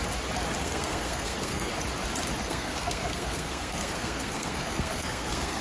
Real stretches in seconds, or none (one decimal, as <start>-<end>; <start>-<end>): 0.0-0.6; 1.7-2.4